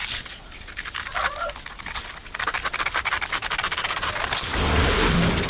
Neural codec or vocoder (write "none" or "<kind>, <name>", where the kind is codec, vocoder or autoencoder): none